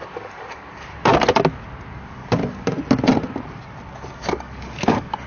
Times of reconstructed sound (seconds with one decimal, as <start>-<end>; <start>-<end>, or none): 0.0-1.1; 1.9-2.4; 4.1-5.3